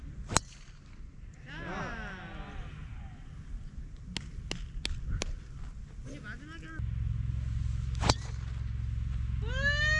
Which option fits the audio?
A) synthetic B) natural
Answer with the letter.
B